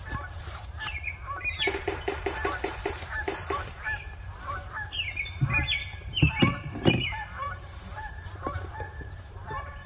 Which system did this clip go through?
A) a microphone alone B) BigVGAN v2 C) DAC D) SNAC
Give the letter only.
B